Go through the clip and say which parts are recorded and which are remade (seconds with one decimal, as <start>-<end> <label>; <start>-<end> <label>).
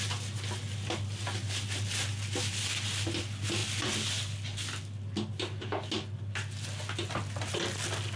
0.0-8.2 recorded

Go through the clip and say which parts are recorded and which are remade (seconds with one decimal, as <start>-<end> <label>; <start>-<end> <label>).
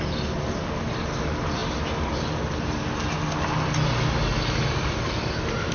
0.0-5.7 recorded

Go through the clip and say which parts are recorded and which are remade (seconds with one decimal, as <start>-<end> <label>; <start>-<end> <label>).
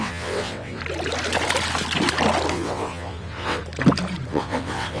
0.0-0.8 remade; 0.8-2.5 recorded; 2.5-3.6 remade; 3.6-4.3 recorded; 4.3-5.0 remade